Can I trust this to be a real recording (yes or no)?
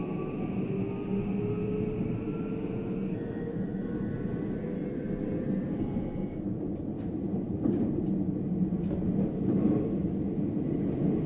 yes